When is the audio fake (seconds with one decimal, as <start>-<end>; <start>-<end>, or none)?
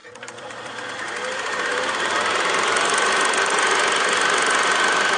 0.0-3.1